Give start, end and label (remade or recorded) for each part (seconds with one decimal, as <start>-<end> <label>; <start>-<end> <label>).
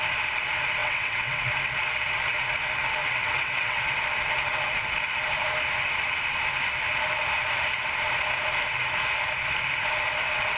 0.0-0.8 recorded; 0.8-1.5 remade; 1.5-3.0 recorded; 3.0-3.8 remade; 3.8-10.6 recorded